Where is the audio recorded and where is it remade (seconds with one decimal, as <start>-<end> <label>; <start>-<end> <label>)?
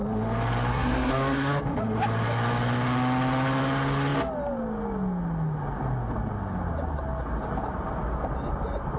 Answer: 0.0-0.7 recorded; 0.7-1.6 remade; 1.6-9.0 recorded